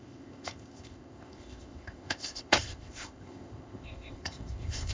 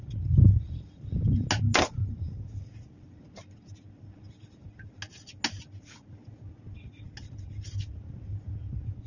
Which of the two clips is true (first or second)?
second